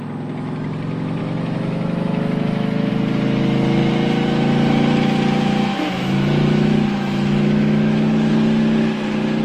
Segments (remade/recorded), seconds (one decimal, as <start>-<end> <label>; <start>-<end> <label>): 0.0-1.2 recorded; 1.2-2.9 remade; 2.9-5.7 recorded; 5.7-8.3 remade; 8.3-9.4 recorded